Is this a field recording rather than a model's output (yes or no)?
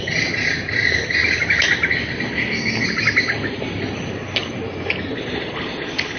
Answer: yes